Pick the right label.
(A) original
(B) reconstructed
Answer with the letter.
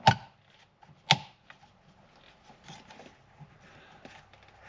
A